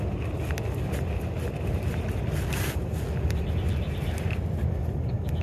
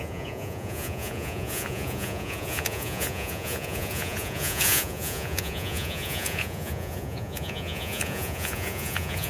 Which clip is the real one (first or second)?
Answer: first